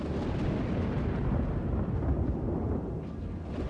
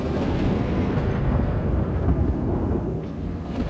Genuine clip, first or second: first